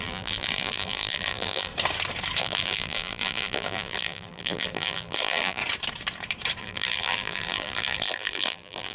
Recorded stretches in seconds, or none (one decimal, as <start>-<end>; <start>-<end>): 1.7-2.4; 5.6-6.6